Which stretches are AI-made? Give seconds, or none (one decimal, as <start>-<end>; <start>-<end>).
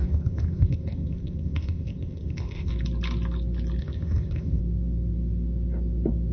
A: 0.0-2.7; 3.8-4.6